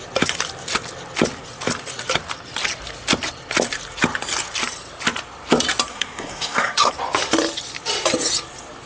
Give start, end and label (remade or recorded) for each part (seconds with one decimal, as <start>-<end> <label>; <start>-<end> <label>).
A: 0.0-5.9 recorded; 5.9-6.9 remade; 6.9-8.9 recorded